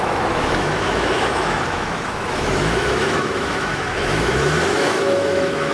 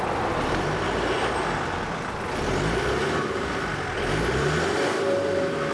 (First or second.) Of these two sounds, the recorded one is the second